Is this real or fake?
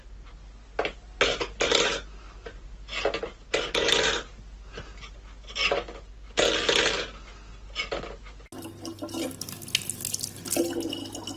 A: real